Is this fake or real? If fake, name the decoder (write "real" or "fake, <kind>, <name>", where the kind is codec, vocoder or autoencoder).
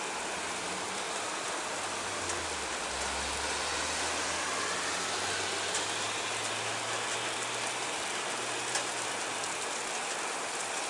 real